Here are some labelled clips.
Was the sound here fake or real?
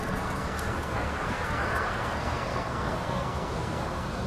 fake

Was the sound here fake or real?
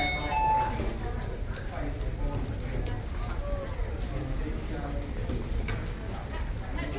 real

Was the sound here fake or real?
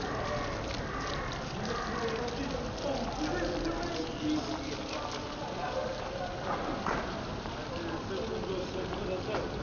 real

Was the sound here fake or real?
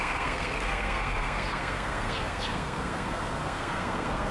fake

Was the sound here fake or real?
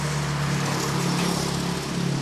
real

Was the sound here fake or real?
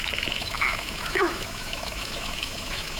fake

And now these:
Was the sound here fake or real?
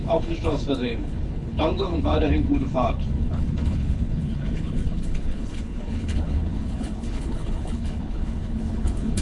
fake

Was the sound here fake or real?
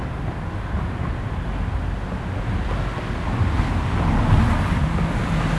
real